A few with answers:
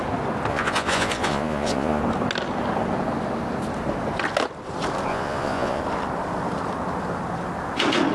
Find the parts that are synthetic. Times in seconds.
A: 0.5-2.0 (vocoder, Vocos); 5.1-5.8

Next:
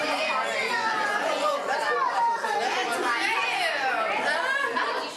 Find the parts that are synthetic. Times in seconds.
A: 0.7-1.8 (vocoder, Vocos)

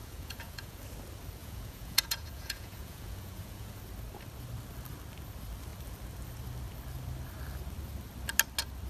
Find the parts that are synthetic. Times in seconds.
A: 0.0-0.8 (vocoder, Vocos); 1.4-3.8

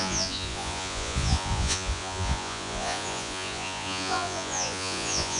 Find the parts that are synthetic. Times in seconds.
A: 0.0-5.4 (vocoder, Vocos)

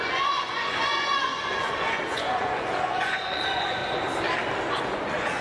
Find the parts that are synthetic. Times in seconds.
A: 0.0-3.8 (vocoder, Vocos); 4.8-5.4

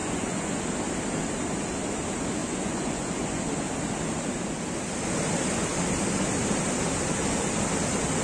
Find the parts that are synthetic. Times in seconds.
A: 0.0-0.6 (vocoder, Vocos); 2.4-3.4

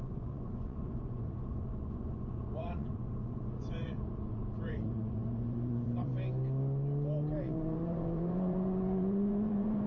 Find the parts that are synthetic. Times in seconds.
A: 0.0-6.1 (vocoder, Vocos); 7.4-9.9

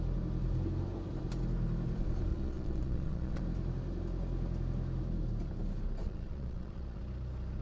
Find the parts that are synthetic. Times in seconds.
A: 2.3-3.4 (vocoder, Vocos); 6.0-7.0